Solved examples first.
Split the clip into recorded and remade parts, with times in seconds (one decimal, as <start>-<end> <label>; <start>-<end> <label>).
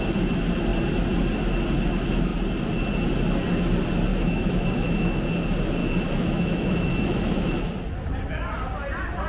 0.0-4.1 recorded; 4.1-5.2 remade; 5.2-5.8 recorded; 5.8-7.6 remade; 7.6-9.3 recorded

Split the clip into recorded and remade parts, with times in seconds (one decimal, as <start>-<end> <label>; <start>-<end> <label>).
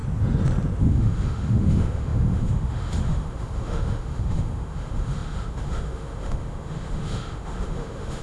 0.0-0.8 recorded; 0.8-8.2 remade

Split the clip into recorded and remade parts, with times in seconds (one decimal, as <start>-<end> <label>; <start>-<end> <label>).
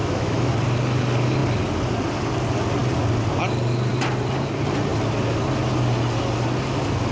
0.0-0.5 remade; 0.5-7.1 recorded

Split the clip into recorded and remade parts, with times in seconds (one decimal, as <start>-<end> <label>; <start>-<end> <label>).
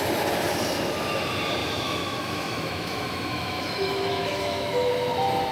0.0-1.6 recorded; 1.6-4.9 remade; 4.9-5.5 recorded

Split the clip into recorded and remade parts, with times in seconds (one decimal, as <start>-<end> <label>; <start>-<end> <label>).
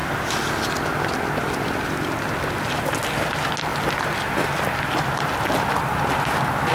0.0-6.7 recorded